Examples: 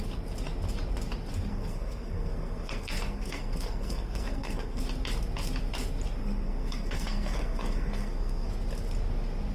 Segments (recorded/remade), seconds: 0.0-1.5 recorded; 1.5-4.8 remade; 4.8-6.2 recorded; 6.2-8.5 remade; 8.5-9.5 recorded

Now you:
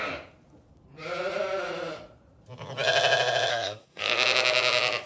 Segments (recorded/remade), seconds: 0.0-3.5 recorded; 3.5-4.0 remade; 4.0-5.1 recorded

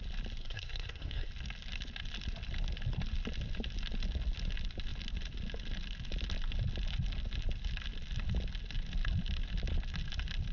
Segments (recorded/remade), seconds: 0.0-0.4 recorded; 0.4-1.3 remade; 1.3-10.5 recorded

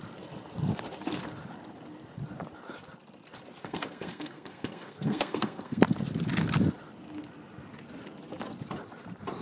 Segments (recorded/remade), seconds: 0.0-3.6 recorded; 3.6-5.8 remade; 5.8-9.4 recorded

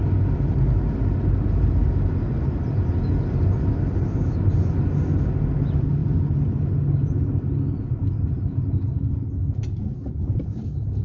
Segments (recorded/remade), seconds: 0.0-11.0 recorded